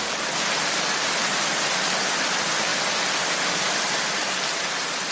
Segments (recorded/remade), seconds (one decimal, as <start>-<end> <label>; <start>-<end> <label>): 0.0-5.1 recorded